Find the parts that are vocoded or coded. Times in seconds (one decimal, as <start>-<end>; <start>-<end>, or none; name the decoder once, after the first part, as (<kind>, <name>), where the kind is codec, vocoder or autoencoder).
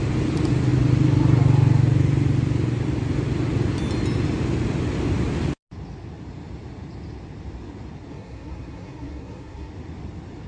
8.1-9.7 (codec, SNAC)